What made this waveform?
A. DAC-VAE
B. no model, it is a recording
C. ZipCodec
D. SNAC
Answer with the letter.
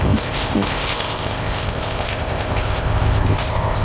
C